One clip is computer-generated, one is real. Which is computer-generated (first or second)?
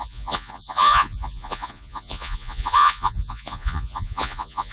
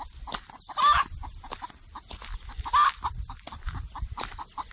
first